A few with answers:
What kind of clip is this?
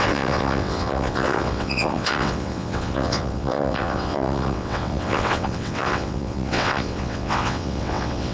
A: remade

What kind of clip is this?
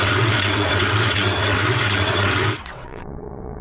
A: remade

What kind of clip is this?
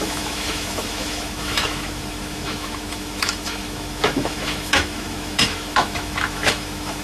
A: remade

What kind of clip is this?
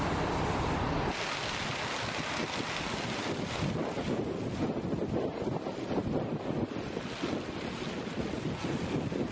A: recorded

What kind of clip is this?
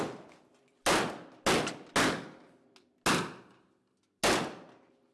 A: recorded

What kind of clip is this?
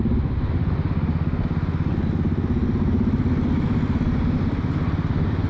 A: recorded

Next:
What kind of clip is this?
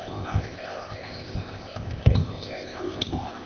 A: remade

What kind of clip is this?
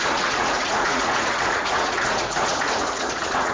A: remade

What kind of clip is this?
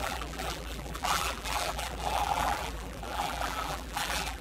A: remade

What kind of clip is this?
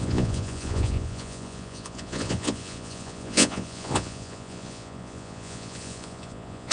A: remade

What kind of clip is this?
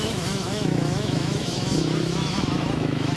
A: remade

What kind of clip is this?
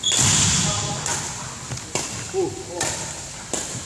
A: recorded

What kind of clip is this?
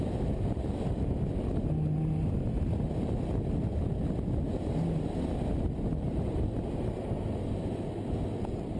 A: recorded